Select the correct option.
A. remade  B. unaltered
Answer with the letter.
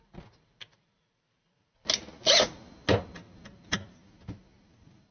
B